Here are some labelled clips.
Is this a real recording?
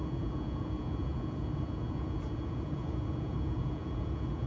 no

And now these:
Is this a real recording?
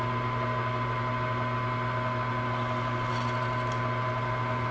yes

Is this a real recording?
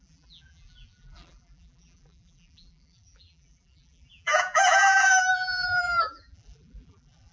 no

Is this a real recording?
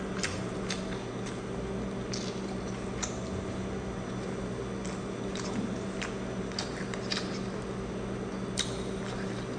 yes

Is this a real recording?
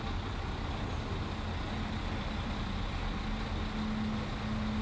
yes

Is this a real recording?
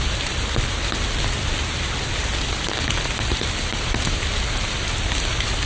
yes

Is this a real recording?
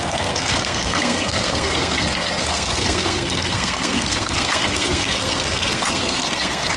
no